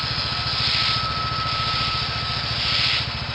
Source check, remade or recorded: recorded